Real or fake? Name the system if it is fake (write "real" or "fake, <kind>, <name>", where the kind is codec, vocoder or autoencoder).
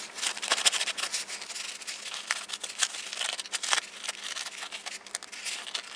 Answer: real